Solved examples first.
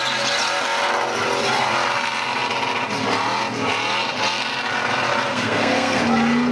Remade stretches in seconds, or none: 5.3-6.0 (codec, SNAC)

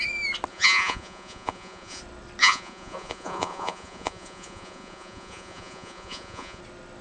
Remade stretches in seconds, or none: 0.5-2.0 (vocoder, Vocos); 2.4-6.6

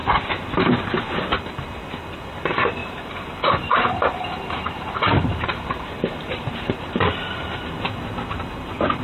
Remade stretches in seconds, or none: 2.8-7.7 (vocoder, BigVGAN v2)